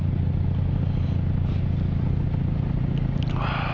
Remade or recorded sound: recorded